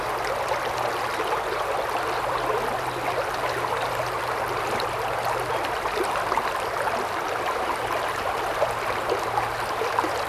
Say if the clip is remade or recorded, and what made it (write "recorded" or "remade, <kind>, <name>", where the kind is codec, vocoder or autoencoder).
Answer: recorded